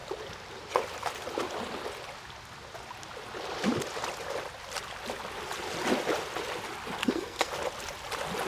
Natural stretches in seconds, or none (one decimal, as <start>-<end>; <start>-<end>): 0.0-7.0; 7.5-8.5